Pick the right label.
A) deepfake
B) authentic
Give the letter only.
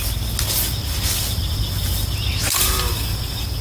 B